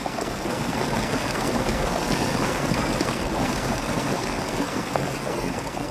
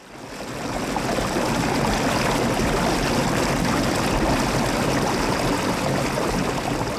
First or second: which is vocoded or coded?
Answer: first